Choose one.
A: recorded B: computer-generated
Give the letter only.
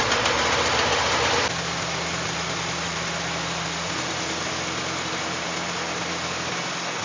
A